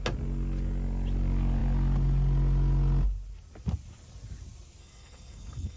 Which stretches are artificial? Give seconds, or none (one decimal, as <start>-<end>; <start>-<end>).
4.8-5.8